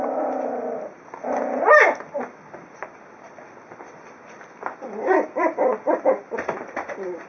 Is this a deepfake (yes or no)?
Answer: no